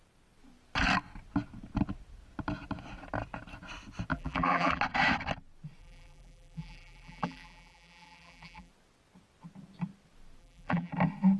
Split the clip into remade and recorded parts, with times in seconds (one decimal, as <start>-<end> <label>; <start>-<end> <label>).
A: 0.0-4.1 recorded; 4.1-4.8 remade; 4.8-5.8 recorded; 5.8-8.7 remade; 8.7-10.4 recorded; 10.4-10.9 remade; 10.9-11.4 recorded